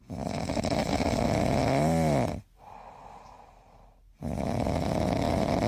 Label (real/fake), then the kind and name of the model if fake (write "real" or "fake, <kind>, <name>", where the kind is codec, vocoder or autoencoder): real